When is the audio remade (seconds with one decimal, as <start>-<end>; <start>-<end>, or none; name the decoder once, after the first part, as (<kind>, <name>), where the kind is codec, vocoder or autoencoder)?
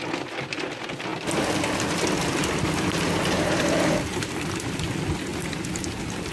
4.1-4.7 (vocoder, BigVGAN v2); 5.3-5.8